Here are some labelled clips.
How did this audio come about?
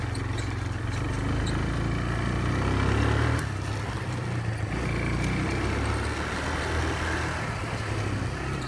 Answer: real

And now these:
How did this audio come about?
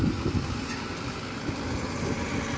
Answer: real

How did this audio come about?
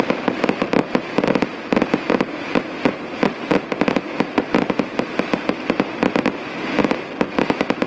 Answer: real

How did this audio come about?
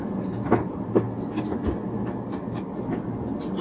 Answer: real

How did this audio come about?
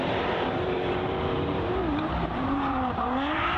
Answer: fake